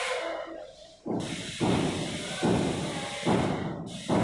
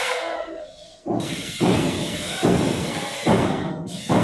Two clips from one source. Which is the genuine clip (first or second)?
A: first